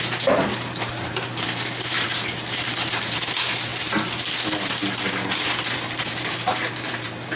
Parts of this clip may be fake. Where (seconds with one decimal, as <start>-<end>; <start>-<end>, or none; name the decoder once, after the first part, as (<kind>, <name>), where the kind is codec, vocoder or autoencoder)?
0.0-3.7 (vocoder, BigVGAN v2); 5.9-7.4